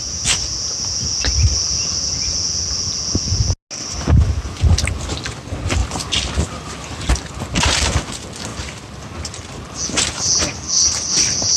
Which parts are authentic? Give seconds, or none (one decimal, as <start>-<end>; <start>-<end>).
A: 0.0-11.6